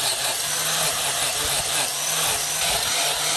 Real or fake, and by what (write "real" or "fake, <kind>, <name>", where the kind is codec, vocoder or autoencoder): fake, vocoder, BigVGAN v2